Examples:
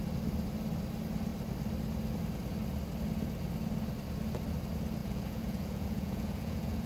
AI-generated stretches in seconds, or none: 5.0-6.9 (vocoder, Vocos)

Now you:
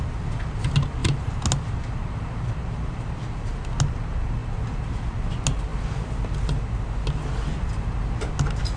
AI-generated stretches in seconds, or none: none

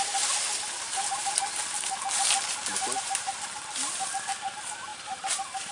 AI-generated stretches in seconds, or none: 4.9-5.7 (vocoder, BigVGAN v2)

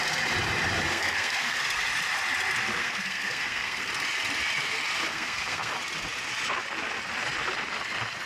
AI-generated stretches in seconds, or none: 0.9-1.6 (codec, SNAC); 2.8-3.9; 5.1-5.7